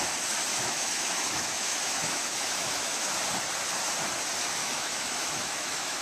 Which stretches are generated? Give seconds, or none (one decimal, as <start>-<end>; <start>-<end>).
0.5-3.1; 4.6-6.0